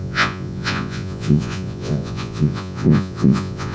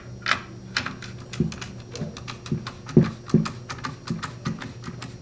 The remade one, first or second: first